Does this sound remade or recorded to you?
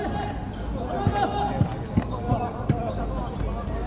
recorded